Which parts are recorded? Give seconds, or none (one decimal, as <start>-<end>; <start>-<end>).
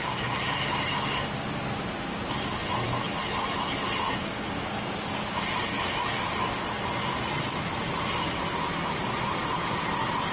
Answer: 0.0-4.2; 4.9-10.3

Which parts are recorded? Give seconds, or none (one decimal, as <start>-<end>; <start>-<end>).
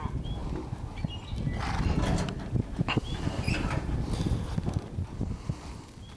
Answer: 0.0-6.2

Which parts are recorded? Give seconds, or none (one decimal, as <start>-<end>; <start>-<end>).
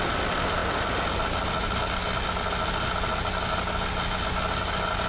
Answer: 0.0-5.1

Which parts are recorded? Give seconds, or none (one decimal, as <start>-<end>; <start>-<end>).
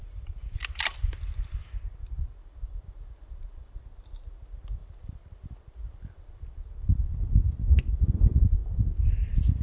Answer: 3.8-4.8; 6.7-8.6; 9.1-9.6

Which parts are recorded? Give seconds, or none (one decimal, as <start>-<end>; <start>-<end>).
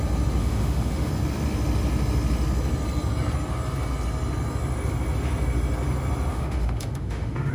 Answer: 0.0-0.4; 1.1-6.3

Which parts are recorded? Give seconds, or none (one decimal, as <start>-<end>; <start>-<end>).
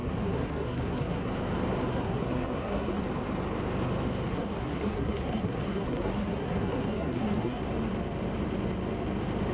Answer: 1.3-1.9; 3.0-4.3; 7.6-9.5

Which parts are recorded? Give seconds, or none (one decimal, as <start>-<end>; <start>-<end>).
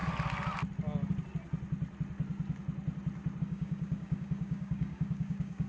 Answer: 0.0-3.4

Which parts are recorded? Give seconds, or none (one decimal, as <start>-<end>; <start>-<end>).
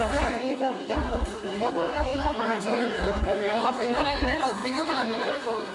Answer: none